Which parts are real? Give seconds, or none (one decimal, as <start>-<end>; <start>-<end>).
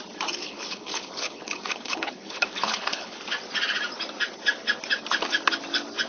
0.0-0.4; 3.2-6.1